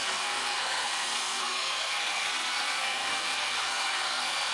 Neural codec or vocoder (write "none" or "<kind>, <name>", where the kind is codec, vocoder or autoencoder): codec, SNAC